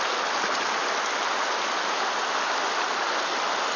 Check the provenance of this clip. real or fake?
real